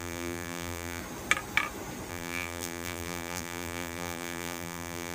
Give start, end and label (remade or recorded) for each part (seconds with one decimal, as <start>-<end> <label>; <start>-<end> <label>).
0.0-1.0 remade; 1.0-2.1 recorded; 2.1-5.1 remade